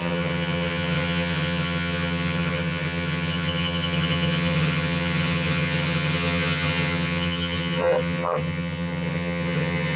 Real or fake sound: fake